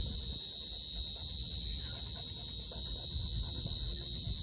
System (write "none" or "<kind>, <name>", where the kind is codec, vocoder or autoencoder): none